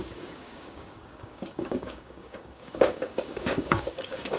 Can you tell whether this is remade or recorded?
remade